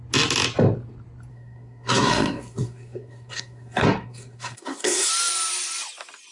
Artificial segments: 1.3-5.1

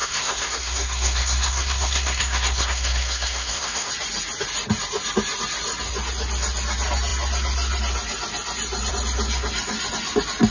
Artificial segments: 0.0-3.9

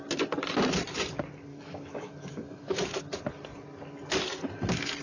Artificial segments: 1.5-3.0

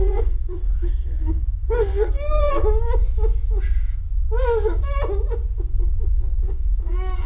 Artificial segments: 0.0-2.6; 6.1-7.3

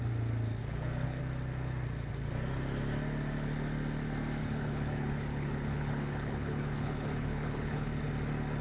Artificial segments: 0.6-1.2; 4.4-8.1

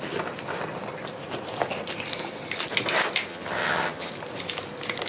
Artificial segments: 3.3-4.1

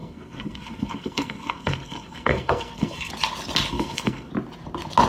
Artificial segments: 0.0-3.1; 3.7-4.3